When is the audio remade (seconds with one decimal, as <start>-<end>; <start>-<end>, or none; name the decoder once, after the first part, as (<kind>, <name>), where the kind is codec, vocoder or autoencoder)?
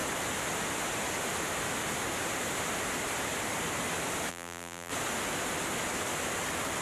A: 4.3-4.9 (vocoder, BigVGAN v2)